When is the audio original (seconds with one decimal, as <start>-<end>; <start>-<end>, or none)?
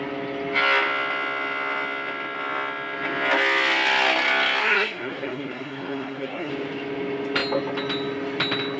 0.0-4.6; 6.5-8.8